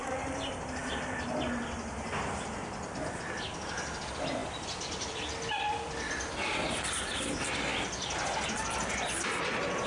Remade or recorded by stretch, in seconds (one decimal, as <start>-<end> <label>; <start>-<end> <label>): 0.0-4.4 recorded; 4.4-7.3 remade; 7.3-9.9 recorded